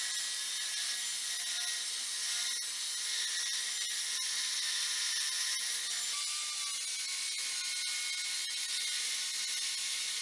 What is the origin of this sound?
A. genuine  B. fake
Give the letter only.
A